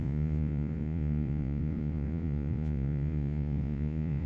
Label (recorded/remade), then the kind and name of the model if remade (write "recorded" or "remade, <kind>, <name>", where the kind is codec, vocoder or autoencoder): remade, vocoder, Vocos